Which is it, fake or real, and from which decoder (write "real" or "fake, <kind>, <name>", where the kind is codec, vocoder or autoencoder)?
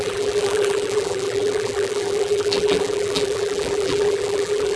fake, vocoder, BigVGAN v2